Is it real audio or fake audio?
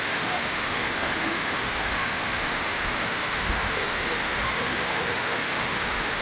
fake